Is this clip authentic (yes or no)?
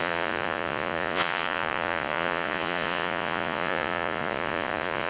no